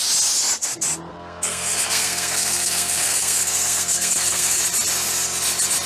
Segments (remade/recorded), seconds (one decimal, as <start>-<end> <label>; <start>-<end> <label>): 0.0-1.1 recorded; 1.1-4.6 remade; 4.6-5.9 recorded

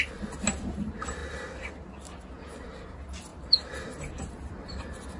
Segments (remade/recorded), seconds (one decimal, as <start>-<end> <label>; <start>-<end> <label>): 0.0-5.2 recorded

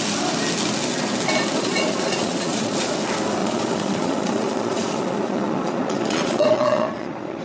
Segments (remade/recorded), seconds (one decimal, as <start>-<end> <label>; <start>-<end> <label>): 0.0-1.6 recorded; 1.6-2.8 remade; 2.8-3.4 recorded; 3.4-7.4 remade

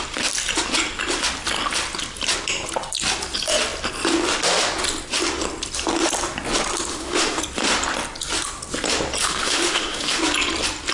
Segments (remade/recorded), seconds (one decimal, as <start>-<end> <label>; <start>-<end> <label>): 0.0-6.9 recorded; 6.9-7.4 remade; 7.4-9.2 recorded; 9.2-10.2 remade; 10.2-10.9 recorded

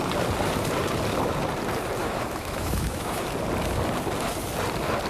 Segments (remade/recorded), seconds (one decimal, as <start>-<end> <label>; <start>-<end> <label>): 0.0-2.0 recorded; 2.0-3.2 remade; 3.2-5.1 recorded

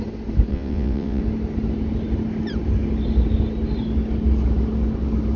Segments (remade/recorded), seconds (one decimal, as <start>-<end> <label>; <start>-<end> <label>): 0.0-0.5 recorded; 0.5-1.2 remade; 1.2-5.4 recorded

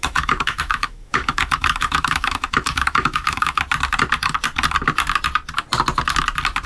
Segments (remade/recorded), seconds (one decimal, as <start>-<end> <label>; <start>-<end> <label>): 0.0-3.6 remade; 3.6-6.7 recorded